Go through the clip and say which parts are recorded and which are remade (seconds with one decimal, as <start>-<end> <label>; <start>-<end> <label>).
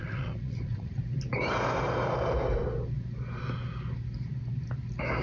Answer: 0.0-1.0 remade; 1.0-5.2 recorded